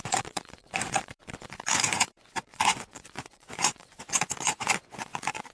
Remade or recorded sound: remade